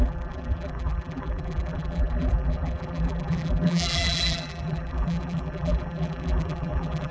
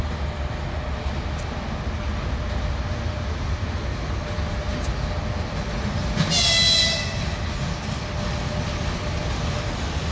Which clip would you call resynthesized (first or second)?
first